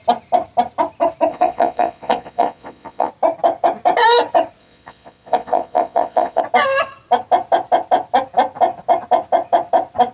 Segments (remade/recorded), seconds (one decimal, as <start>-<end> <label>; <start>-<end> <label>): 0.0-1.3 recorded; 1.3-3.1 remade; 3.1-4.6 recorded; 4.6-6.4 remade; 6.4-10.1 recorded